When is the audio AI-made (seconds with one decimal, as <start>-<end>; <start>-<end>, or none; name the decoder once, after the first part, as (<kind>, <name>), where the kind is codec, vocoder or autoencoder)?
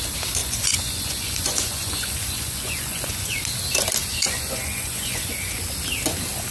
0.4-3.4 (vocoder, Vocos); 4.0-5.6